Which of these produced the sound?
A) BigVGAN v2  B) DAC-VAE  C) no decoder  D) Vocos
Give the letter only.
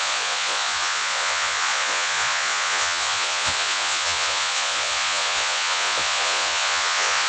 D